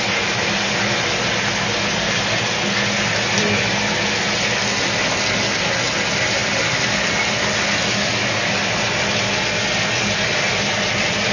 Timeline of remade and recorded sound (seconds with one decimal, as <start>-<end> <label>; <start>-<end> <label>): 0.0-11.3 recorded